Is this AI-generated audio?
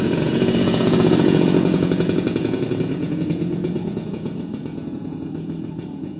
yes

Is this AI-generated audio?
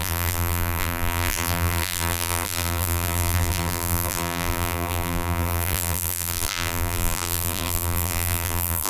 yes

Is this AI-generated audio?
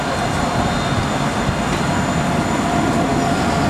no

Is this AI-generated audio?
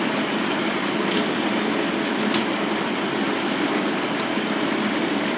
no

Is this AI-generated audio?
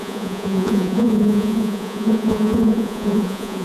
yes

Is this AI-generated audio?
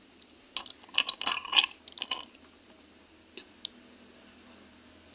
no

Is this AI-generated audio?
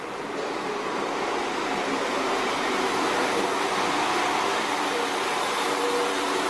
yes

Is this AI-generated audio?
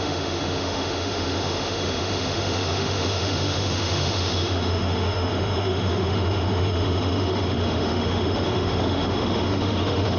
yes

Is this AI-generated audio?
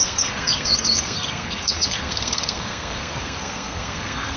yes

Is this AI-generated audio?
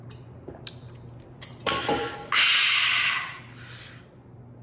no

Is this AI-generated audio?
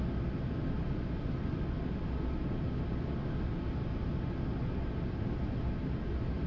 no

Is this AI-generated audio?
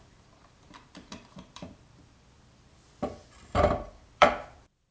yes